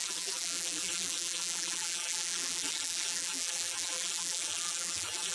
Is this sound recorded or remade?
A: remade